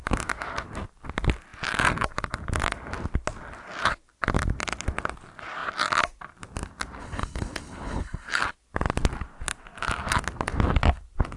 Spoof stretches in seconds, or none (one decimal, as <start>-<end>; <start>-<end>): 7.0-8.4